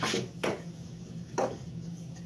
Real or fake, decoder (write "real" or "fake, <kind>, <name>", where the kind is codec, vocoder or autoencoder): fake, codec, DAC